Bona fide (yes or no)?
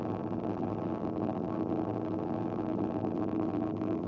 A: no